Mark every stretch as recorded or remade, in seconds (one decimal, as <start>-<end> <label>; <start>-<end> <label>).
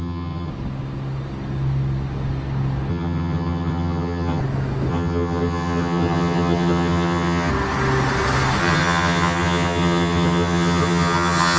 0.0-0.5 remade; 0.5-2.9 recorded; 2.9-4.4 remade; 4.4-4.9 recorded; 4.9-7.5 remade; 7.5-8.6 recorded; 8.6-11.6 remade